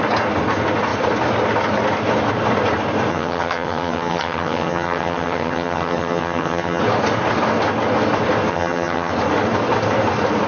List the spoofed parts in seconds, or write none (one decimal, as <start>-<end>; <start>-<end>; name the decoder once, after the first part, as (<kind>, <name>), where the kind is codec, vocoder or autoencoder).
3.1-6.8 (vocoder, HiFi-GAN); 8.5-9.1

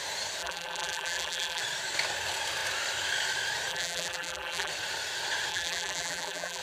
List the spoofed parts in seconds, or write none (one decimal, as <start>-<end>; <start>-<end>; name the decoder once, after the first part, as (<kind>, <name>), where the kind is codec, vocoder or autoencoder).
0.4-1.6 (vocoder, BigVGAN v2); 3.7-4.7; 5.5-6.6

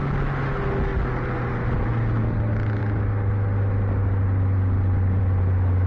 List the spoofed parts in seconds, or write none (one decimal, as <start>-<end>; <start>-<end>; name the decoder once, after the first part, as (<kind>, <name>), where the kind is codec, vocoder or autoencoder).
none

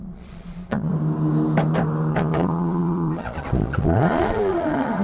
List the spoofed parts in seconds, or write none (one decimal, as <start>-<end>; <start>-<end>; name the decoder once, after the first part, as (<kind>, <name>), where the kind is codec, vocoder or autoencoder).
0.0-0.9 (vocoder, Vocos); 2.1-5.0

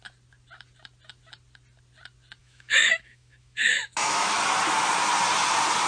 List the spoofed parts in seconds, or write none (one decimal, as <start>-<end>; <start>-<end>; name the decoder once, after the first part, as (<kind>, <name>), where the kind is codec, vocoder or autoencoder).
2.4-4.4 (autoencoder, DAC-VAE)

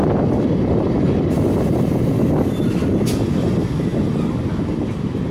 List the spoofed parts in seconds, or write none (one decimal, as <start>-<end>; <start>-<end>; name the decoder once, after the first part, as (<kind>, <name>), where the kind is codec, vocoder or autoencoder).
none

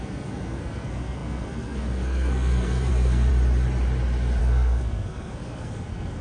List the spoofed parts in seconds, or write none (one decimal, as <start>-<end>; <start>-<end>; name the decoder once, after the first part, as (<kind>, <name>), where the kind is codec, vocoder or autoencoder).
0.0-3.3 (codec, SNAC); 4.4-6.2